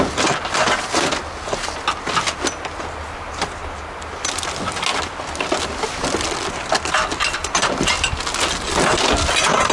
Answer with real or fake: real